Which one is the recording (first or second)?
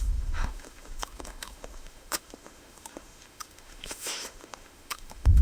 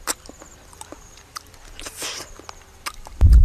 second